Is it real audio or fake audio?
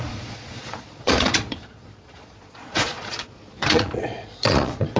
fake